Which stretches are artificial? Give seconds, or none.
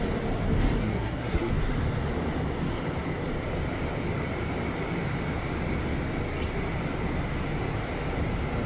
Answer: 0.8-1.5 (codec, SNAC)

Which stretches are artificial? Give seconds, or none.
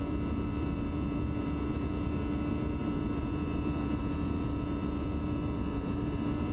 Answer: 0.0-6.5 (vocoder, Vocos)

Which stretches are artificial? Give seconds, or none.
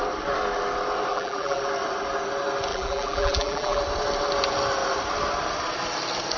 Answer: 1.1-1.6 (vocoder, BigVGAN v2); 2.7-3.8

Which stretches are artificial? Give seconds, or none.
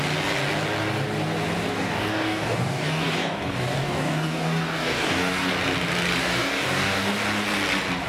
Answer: 1.7-5.5 (codec, DAC); 6.2-7.1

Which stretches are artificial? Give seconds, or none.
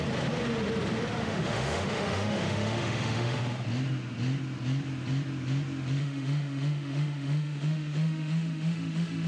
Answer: 1.2-3.4 (autoencoder, DAC-VAE); 6.0-9.3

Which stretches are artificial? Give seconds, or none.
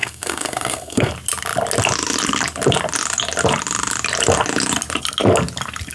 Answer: 0.0-1.1 (codec, SNAC)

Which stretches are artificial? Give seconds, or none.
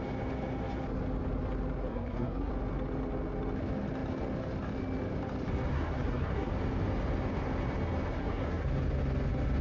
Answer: 1.9-2.5 (codec, SNAC); 5.7-6.5; 8.1-8.7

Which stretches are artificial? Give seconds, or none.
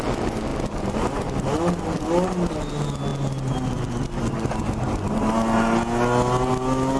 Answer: none